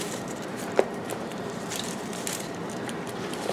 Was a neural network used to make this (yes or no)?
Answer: yes